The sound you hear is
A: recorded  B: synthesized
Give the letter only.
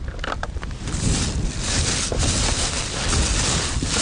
A